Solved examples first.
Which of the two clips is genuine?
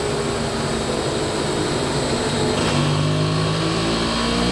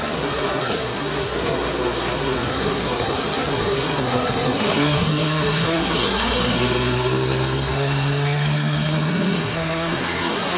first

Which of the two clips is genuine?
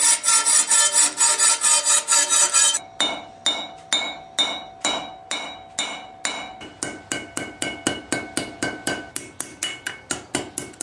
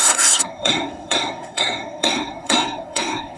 first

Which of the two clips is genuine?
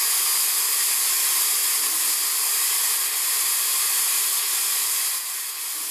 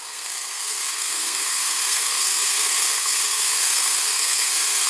first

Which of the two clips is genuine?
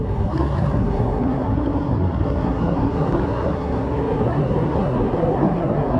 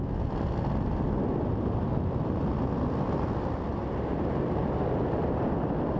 second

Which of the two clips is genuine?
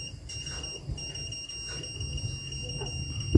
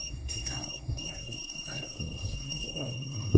first